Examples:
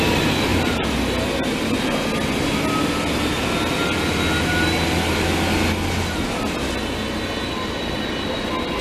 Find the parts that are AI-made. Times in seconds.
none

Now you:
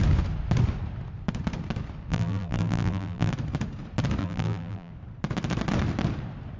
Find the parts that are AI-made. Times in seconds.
2.1-3.3; 4.2-4.9

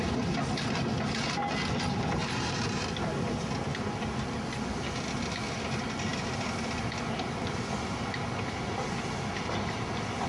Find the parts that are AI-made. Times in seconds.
2.2-2.9

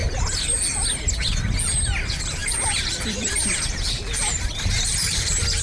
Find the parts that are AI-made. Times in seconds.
2.4-5.6

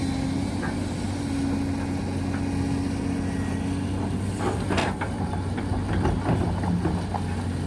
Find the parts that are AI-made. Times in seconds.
4.8-5.9

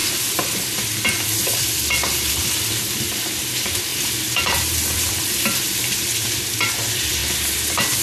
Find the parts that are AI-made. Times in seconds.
0.0-7.2

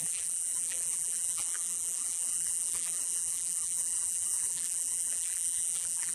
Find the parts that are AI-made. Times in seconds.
0.0-6.1